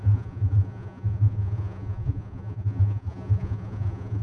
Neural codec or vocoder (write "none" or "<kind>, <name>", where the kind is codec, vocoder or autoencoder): vocoder, Vocos